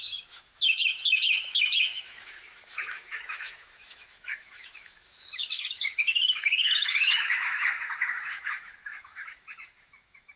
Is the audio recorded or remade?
remade